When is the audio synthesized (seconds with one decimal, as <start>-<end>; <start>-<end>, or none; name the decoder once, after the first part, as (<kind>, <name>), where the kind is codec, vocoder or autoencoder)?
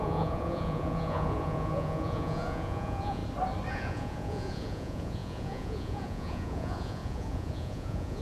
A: 0.0-3.2 (vocoder, Vocos); 3.7-8.2